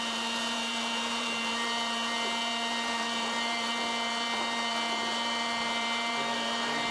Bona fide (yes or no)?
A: no